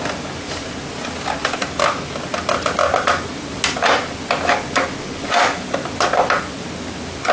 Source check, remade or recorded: recorded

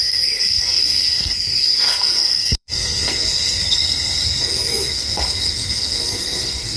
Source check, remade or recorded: remade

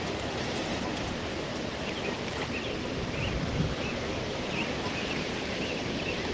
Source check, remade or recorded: remade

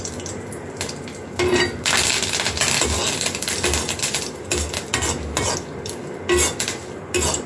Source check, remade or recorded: recorded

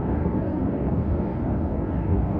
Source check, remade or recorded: remade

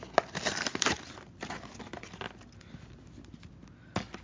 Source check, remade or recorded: recorded